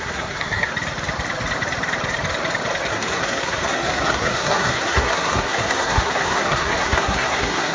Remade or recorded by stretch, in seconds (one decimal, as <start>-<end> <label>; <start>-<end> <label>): 0.0-0.7 remade; 0.7-2.9 recorded; 2.9-7.7 remade